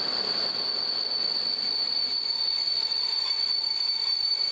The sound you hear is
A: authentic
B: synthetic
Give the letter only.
A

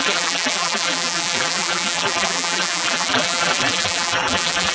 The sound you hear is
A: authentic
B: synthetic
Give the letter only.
B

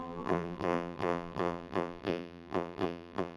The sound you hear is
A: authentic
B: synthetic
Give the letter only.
B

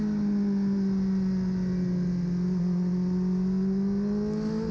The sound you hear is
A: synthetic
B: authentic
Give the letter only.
B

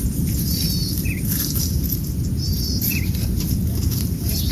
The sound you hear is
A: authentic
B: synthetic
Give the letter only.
B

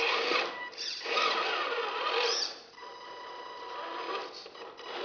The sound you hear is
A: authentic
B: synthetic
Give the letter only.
B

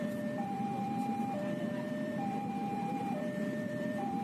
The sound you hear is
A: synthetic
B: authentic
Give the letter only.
A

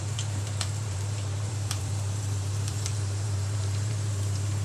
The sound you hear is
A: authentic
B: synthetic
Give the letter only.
B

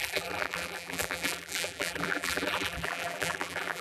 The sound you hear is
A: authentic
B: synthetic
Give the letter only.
B